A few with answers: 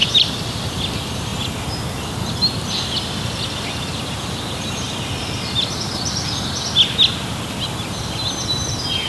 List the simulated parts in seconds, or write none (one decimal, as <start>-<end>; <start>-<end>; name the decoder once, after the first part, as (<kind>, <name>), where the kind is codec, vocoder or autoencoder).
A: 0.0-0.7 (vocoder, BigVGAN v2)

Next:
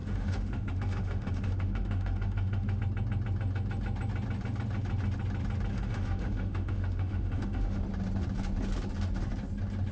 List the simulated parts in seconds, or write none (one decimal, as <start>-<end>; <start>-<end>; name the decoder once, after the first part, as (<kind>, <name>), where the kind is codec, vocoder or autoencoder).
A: 0.0-2.8 (autoencoder, DAC-VAE); 5.7-7.8

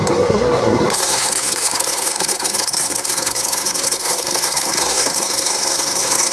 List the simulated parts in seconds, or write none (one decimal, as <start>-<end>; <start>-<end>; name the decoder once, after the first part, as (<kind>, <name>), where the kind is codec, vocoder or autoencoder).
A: 0.0-6.3 (codec, SNAC)